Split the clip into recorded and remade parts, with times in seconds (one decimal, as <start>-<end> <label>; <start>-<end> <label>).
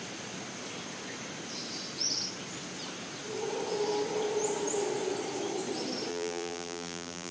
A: 0.0-6.1 recorded; 6.1-7.3 remade